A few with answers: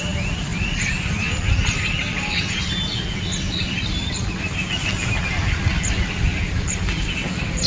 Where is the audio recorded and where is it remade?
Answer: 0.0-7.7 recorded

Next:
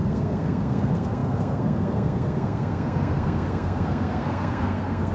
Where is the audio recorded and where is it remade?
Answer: 0.0-5.1 remade